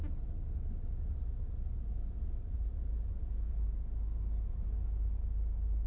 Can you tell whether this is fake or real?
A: real